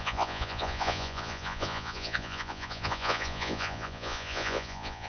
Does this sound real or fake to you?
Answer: fake